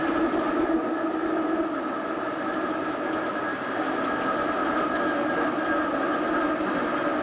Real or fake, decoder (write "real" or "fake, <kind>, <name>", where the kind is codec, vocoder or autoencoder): real